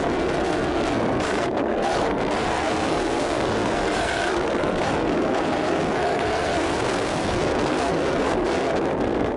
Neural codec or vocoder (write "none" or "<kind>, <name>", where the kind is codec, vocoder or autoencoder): codec, SNAC